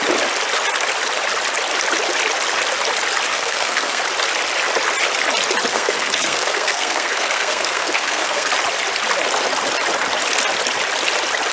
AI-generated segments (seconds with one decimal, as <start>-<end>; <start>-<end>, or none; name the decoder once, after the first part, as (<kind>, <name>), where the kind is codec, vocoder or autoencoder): 3.3-4.0 (codec, SNAC); 5.7-8.5